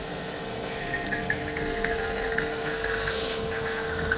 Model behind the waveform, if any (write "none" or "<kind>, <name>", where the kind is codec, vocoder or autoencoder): codec, SNAC